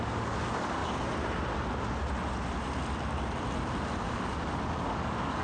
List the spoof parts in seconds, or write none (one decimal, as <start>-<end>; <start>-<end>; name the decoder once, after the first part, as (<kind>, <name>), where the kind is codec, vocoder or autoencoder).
0.0-0.8 (codec, DAC); 4.0-5.4